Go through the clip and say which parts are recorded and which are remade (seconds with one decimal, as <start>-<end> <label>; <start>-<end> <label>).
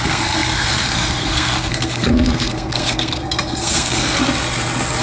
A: 0.0-4.2 remade; 4.2-5.0 recorded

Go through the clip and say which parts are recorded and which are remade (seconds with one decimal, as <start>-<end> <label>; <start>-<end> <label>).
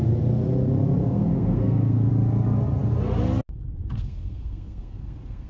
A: 0.0-1.0 recorded; 1.0-2.1 remade; 2.1-3.8 recorded; 3.8-5.5 remade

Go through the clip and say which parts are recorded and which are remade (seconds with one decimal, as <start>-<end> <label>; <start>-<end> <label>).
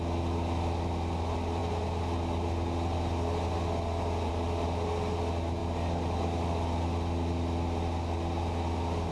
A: 0.0-9.1 recorded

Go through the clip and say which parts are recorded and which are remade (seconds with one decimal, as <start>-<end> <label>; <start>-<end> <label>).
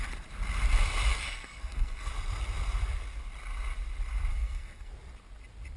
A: 0.0-1.1 recorded; 1.1-2.1 remade; 2.1-4.3 recorded; 4.3-4.9 remade; 4.9-5.8 recorded